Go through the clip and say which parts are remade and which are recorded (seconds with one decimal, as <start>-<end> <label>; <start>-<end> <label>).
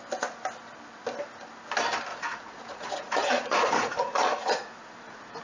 0.0-2.1 recorded; 2.1-5.4 remade